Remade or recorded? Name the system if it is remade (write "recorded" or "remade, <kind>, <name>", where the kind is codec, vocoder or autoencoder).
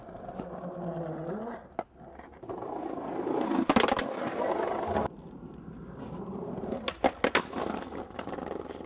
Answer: recorded